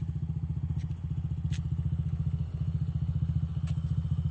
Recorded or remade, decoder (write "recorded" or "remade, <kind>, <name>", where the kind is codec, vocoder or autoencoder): recorded